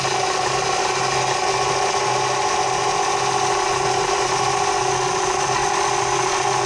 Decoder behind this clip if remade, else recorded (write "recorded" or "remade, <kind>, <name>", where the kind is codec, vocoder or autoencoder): recorded